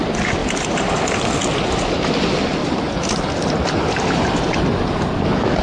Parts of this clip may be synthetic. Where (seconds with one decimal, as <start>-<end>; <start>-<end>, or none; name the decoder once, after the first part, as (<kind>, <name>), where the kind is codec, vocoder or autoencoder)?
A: none